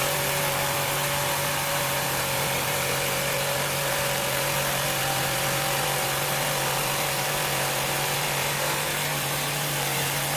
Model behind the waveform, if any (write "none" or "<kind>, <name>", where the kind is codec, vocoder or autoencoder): vocoder, BigVGAN v2